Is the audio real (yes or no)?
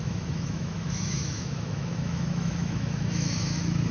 no